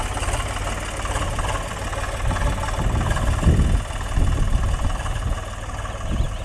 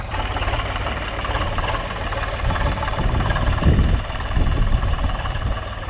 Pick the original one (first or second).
first